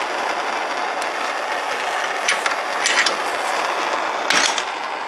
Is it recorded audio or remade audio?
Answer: recorded